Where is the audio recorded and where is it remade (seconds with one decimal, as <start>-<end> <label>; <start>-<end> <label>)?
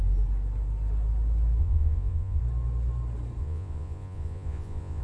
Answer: 0.0-1.6 recorded; 1.6-2.4 remade; 2.4-3.4 recorded; 3.4-5.0 remade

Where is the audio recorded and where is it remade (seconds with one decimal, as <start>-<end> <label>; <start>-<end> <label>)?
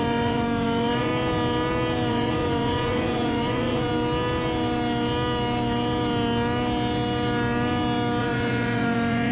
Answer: 0.0-1.1 remade; 1.1-2.1 recorded; 2.1-3.9 remade; 3.9-8.2 recorded; 8.2-9.3 remade